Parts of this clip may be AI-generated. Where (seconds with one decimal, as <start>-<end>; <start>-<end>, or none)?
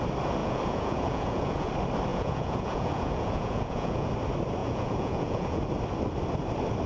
0.4-1.7; 2.1-4.1; 4.6-5.6